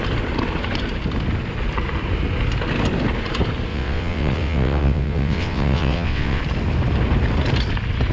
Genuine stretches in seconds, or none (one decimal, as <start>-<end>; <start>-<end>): 0.0-3.7; 6.4-8.1